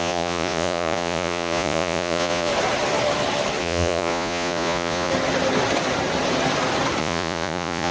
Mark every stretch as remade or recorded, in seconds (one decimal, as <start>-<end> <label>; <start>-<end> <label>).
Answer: 0.0-2.5 remade; 2.5-3.6 recorded; 3.6-5.1 remade; 5.1-7.0 recorded; 7.0-7.9 remade

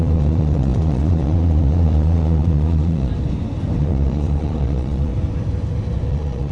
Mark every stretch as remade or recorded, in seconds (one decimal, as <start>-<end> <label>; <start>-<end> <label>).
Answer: 0.0-3.1 remade; 3.1-3.8 recorded; 3.8-5.1 remade; 5.1-6.1 recorded; 6.1-6.5 remade

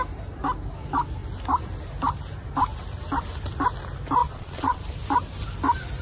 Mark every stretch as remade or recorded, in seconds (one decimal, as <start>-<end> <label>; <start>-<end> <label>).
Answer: 0.0-4.2 recorded; 4.2-4.8 remade; 4.8-6.0 recorded

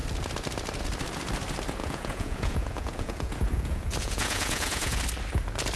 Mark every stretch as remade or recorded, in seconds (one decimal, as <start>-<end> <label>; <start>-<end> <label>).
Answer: 0.0-1.8 recorded; 1.8-5.0 remade; 5.0-5.8 recorded

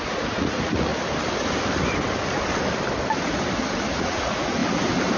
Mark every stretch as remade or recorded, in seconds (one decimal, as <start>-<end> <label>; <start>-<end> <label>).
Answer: 0.0-0.9 remade; 0.9-4.0 recorded; 4.0-4.6 remade; 4.6-5.2 recorded

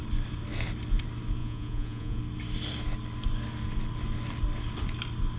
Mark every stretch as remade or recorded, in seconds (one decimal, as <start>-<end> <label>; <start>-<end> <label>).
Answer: 0.0-1.4 recorded; 1.4-2.2 remade; 2.2-5.4 recorded

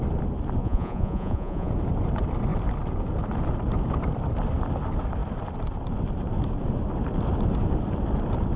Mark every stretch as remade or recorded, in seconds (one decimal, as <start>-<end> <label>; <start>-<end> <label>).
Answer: 0.0-0.6 recorded; 0.6-1.7 remade; 1.7-8.6 recorded